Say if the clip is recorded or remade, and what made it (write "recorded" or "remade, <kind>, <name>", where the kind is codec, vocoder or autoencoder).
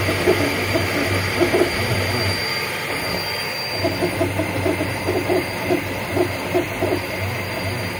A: remade, vocoder, BigVGAN v2